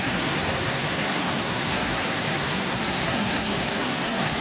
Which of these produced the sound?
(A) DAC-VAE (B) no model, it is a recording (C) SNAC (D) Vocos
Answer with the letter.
C